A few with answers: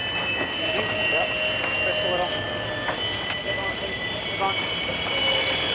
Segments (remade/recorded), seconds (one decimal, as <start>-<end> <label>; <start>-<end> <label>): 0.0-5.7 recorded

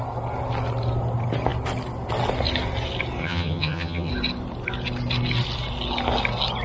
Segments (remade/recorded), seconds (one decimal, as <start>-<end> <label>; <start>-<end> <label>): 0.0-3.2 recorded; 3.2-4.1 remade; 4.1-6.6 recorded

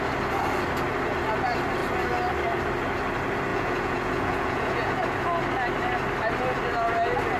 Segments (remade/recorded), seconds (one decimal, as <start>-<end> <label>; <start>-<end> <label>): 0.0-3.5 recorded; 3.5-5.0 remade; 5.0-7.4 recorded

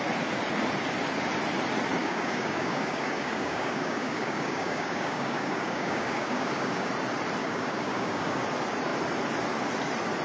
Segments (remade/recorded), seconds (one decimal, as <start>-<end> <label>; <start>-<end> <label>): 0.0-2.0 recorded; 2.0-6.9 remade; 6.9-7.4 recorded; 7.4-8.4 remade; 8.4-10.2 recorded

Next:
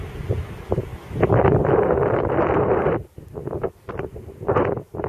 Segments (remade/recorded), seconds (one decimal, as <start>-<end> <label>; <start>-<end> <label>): 0.0-0.9 recorded; 0.9-3.5 remade; 3.5-5.1 recorded

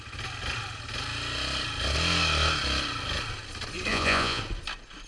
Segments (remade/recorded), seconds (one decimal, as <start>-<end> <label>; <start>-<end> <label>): 0.0-3.9 recorded; 3.9-4.4 remade; 4.4-5.1 recorded